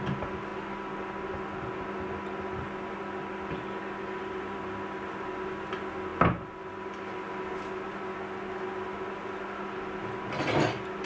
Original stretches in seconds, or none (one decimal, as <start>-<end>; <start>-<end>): 0.0-11.1